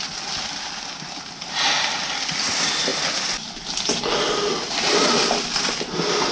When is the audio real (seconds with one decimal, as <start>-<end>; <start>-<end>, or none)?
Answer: 0.0-6.3